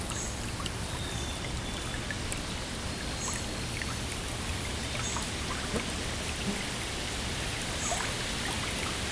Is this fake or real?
real